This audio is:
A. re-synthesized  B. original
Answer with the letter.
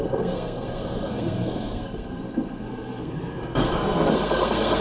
A